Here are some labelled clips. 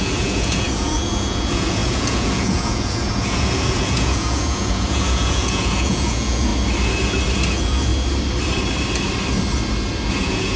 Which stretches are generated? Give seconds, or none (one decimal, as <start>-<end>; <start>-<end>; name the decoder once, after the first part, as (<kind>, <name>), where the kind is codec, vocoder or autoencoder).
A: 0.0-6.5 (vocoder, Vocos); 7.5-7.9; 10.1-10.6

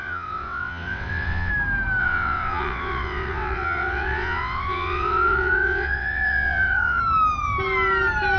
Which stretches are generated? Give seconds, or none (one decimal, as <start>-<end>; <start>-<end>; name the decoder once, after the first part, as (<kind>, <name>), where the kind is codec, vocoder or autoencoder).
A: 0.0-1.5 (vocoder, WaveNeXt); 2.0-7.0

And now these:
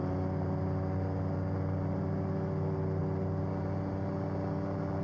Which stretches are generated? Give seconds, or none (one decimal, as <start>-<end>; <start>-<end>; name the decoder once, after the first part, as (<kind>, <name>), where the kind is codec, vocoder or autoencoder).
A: none

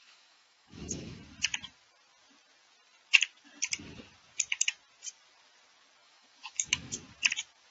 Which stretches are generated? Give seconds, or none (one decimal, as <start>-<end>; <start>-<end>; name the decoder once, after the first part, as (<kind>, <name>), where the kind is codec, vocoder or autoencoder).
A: 0.0-1.2 (autoencoder, DAC-VAE); 6.0-6.9

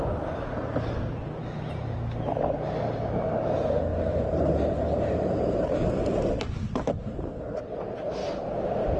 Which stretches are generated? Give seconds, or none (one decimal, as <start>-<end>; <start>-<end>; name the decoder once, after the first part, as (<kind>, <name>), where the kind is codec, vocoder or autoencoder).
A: 3.9-5.8 (vocoder, BigVGAN v2); 8.2-9.0